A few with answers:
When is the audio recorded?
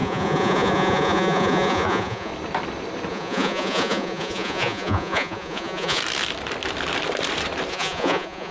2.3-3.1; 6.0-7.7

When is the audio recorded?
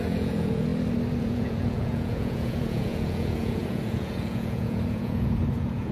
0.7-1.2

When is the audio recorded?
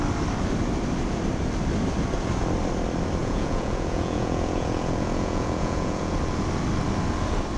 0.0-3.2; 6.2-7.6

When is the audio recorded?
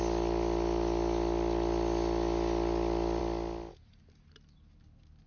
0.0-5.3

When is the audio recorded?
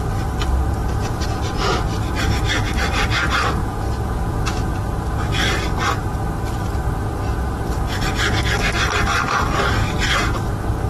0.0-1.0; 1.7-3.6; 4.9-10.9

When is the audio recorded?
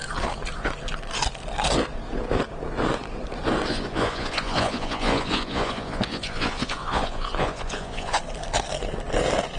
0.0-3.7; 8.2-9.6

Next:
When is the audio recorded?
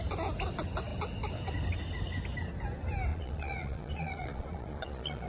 0.0-3.1